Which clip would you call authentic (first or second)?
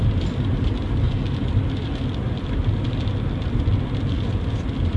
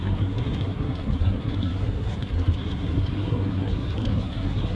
first